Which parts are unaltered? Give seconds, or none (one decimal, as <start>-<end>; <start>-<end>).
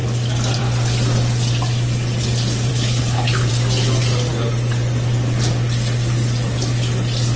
0.0-2.7; 3.5-7.4